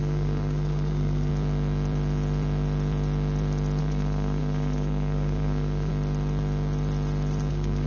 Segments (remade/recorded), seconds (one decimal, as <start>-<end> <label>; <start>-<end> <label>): 0.0-1.3 remade; 1.3-3.8 recorded; 3.8-5.9 remade; 5.9-7.5 recorded; 7.5-7.9 remade